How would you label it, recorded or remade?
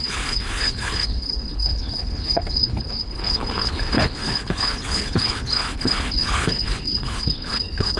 remade